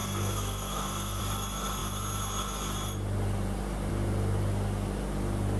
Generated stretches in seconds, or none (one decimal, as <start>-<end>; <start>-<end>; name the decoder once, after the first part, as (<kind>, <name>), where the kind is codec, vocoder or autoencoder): 0.0-1.2 (codec, SNAC)